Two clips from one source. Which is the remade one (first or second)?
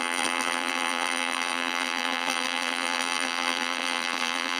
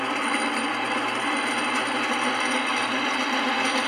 first